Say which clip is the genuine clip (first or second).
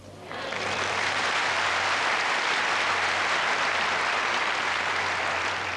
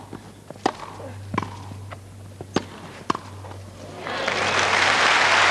second